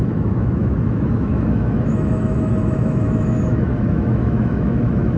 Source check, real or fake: fake